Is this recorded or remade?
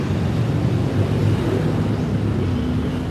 recorded